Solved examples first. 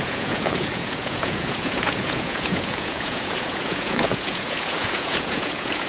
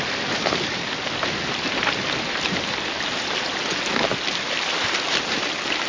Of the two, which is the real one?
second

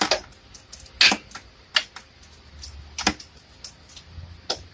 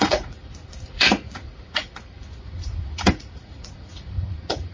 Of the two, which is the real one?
first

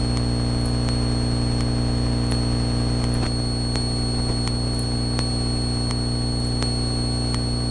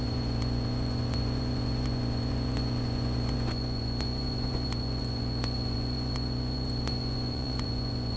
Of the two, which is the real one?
first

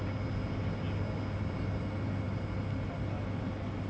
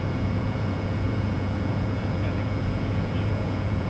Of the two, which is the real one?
first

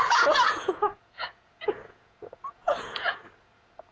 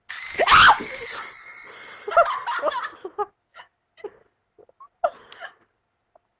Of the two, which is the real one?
second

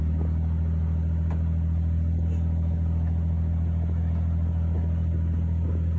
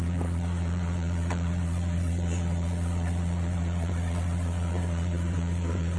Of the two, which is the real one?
first